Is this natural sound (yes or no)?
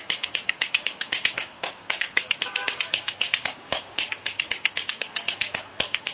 no